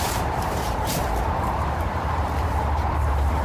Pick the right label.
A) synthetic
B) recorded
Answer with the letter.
A